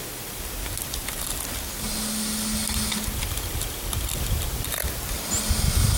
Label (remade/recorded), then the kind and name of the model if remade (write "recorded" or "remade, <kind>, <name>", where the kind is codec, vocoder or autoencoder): recorded